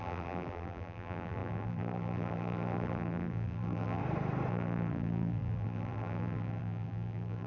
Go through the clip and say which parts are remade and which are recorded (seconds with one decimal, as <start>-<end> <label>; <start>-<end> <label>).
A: 0.0-4.0 remade; 4.0-4.5 recorded; 4.5-7.5 remade